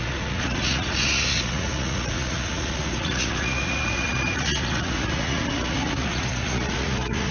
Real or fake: fake